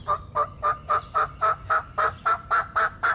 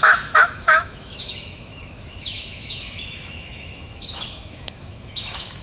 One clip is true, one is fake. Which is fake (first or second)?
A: second